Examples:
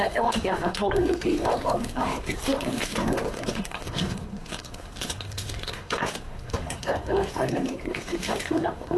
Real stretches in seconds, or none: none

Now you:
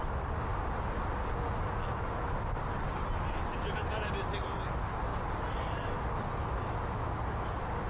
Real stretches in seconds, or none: 0.0-7.9

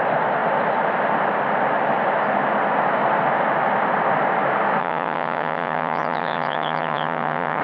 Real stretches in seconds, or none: 0.0-4.8

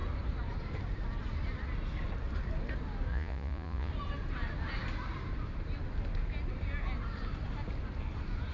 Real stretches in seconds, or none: 0.0-3.1; 3.9-8.5

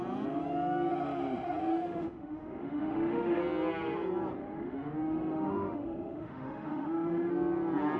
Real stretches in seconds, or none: 0.0-1.7; 3.4-4.4; 7.3-8.0